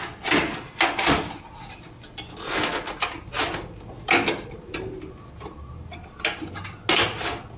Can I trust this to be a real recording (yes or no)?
yes